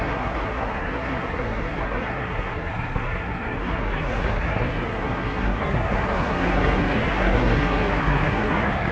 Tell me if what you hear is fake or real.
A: fake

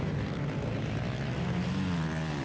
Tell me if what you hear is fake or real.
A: real